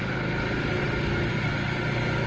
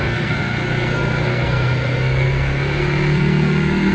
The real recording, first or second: first